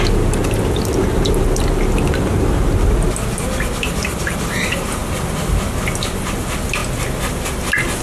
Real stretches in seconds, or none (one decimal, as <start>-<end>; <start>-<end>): 0.0-8.0